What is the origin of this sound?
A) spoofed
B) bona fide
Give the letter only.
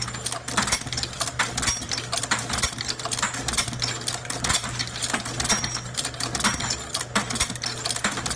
B